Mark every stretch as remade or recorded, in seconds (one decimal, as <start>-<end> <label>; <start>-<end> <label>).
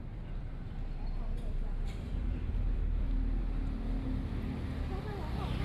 0.0-3.4 remade; 3.4-5.6 recorded